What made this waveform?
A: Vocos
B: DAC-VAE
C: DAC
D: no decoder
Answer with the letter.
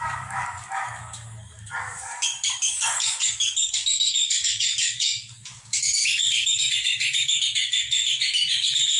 C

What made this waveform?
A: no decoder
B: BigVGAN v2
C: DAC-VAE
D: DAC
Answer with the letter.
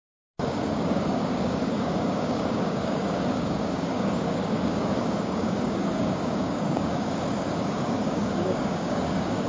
D